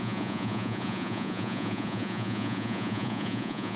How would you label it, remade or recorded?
remade